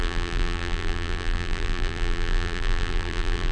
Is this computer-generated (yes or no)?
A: yes